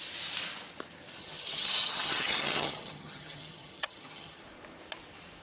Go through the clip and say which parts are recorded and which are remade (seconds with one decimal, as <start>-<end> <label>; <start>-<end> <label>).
0.0-1.2 recorded; 1.2-4.4 remade; 4.4-5.4 recorded